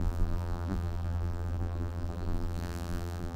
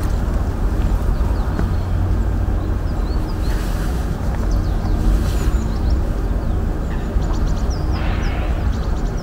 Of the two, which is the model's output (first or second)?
first